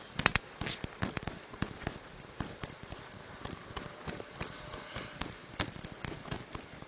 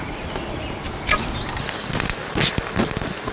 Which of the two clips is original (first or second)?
second